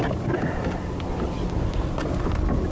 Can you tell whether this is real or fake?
real